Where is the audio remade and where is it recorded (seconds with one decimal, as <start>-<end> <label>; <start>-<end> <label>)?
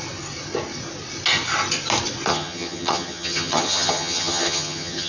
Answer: 0.0-2.3 recorded; 2.3-5.1 remade